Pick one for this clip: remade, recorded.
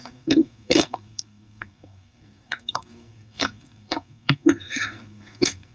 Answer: remade